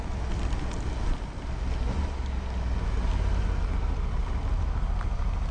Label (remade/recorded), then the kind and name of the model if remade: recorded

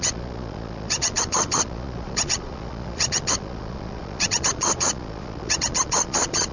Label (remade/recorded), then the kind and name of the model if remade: remade, vocoder, Vocos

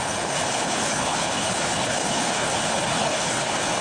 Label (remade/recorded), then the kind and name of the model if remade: remade, codec, HILCodec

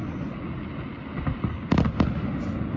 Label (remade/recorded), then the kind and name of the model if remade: recorded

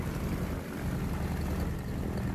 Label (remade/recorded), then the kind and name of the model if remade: recorded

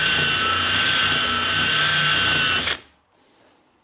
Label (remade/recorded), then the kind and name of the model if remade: recorded